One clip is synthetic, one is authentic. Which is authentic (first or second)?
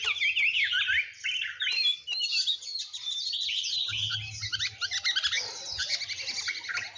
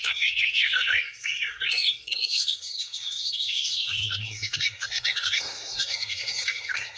first